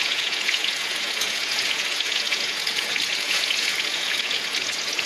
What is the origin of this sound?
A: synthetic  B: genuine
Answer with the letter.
A